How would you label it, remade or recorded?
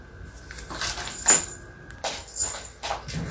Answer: recorded